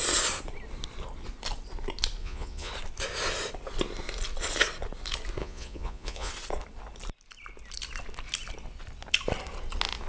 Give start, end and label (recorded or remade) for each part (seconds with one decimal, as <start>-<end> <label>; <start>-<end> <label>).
0.0-2.2 recorded; 2.2-2.7 remade; 2.7-5.4 recorded; 5.4-6.3 remade; 6.3-10.1 recorded